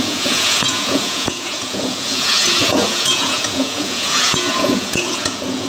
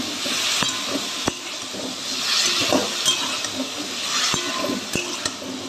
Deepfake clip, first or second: first